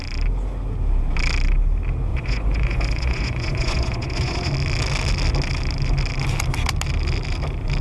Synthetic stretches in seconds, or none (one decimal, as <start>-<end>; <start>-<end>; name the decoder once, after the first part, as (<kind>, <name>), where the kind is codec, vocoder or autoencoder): 2.1-4.5 (vocoder, Vocos)